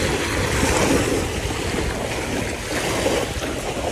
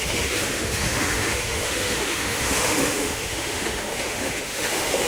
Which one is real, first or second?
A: first